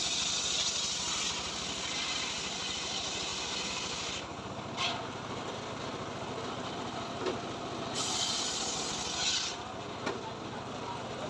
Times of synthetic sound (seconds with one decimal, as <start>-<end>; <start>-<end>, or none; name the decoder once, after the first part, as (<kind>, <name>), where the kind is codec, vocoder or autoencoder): none

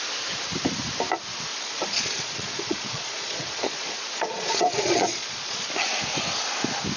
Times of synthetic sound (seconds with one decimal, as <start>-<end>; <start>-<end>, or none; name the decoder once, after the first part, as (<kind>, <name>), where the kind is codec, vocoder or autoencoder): 1.5-5.7 (vocoder, Vocos)